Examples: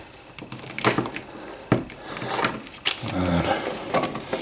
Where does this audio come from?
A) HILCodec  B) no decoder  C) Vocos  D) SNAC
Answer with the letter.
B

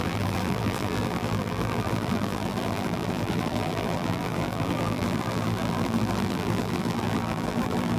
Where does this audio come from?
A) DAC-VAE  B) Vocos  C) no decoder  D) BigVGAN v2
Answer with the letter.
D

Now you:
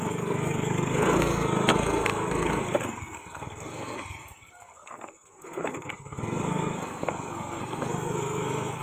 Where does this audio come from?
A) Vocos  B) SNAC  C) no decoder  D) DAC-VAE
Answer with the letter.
B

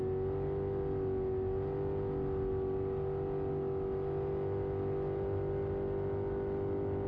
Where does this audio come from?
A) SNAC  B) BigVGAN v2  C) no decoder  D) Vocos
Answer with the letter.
C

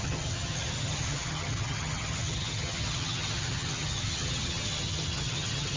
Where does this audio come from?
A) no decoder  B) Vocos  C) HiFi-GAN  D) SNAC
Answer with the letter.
C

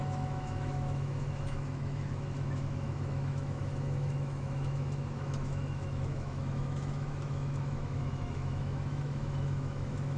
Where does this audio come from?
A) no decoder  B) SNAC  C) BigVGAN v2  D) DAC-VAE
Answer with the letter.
D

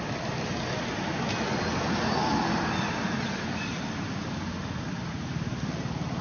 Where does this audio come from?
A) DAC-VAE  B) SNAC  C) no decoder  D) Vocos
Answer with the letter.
C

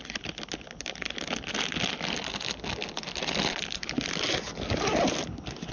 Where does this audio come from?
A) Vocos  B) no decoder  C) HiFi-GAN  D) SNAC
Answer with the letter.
B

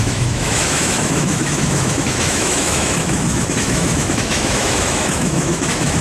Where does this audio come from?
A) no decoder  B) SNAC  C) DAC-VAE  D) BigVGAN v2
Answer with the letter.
C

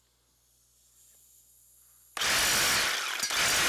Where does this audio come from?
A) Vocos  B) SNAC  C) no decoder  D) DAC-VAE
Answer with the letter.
C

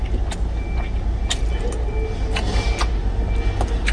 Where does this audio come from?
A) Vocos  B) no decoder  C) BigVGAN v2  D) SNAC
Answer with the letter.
B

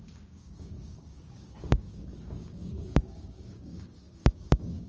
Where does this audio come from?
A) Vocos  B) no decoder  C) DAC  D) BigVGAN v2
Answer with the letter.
C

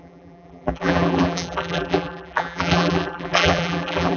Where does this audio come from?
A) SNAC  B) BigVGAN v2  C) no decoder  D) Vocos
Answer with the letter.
B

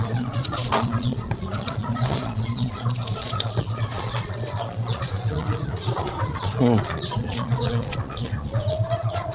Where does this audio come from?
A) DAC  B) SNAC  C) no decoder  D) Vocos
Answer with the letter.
D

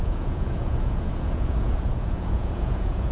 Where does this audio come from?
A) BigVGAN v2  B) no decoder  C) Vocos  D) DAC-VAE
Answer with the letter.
C